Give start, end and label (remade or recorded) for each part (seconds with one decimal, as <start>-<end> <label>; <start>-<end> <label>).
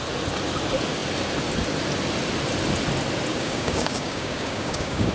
0.0-3.3 recorded; 3.3-5.1 remade